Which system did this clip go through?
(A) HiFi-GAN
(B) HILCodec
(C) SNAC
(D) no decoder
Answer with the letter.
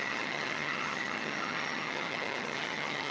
A